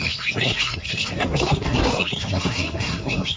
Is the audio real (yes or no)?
no